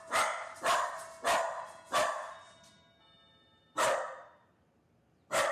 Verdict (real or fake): real